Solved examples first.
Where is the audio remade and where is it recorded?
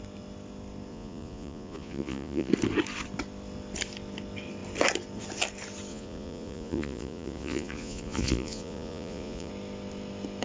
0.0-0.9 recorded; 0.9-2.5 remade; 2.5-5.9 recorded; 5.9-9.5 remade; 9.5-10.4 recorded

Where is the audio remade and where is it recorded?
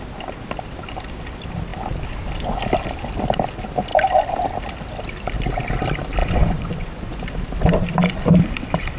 0.0-6.2 recorded; 6.2-7.2 remade; 7.2-9.0 recorded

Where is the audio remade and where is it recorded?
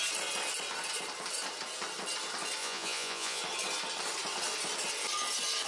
0.0-2.6 recorded; 2.6-3.4 remade; 3.4-5.7 recorded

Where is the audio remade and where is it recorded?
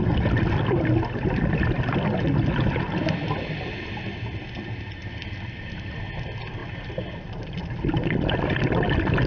0.0-9.3 recorded